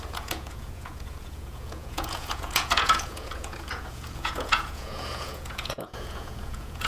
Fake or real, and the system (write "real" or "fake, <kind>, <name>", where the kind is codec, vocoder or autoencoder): fake, vocoder, Vocos